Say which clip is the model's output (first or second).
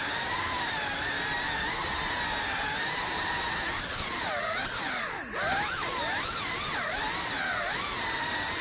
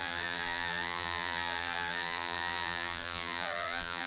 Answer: second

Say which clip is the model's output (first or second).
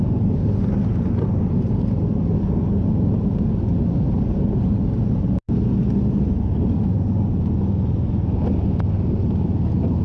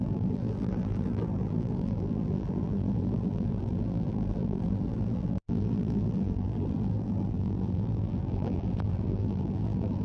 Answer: second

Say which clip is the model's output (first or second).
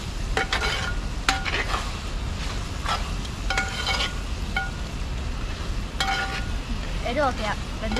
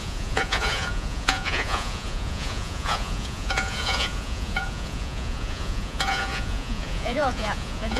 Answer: second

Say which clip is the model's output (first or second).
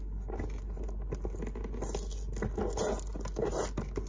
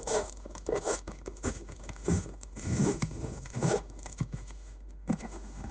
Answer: second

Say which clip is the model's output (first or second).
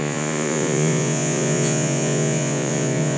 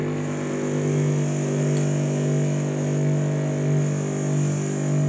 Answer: first